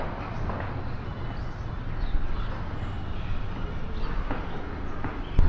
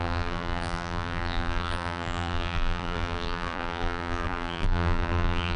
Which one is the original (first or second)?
first